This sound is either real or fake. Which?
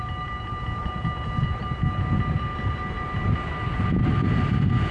real